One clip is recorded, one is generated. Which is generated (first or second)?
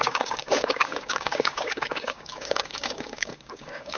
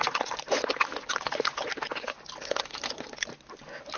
first